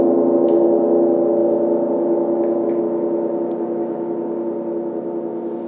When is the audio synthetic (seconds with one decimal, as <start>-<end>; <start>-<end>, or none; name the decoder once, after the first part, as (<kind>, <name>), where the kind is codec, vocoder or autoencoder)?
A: none